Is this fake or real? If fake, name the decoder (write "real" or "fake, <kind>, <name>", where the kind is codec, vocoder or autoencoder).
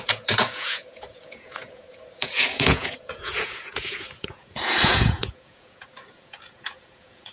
fake, vocoder, Vocos